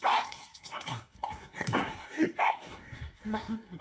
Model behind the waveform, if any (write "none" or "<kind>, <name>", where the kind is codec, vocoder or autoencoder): codec, SNAC